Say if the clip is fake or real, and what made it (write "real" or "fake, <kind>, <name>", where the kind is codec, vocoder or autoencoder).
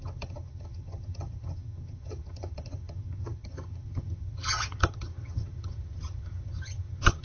fake, vocoder, HiFi-GAN